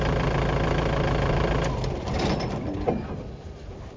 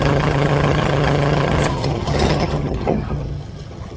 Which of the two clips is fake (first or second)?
second